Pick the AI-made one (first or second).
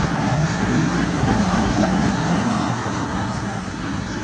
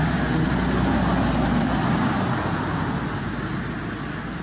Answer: first